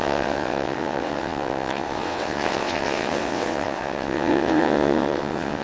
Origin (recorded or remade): remade